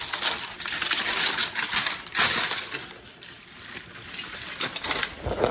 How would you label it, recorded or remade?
recorded